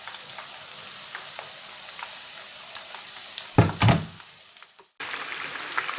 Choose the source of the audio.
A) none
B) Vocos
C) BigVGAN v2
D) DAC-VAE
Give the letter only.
A